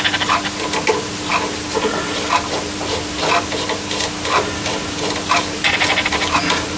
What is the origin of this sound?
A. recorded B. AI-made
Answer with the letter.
A